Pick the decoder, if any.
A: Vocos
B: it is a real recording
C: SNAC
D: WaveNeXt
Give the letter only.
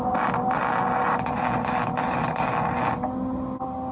B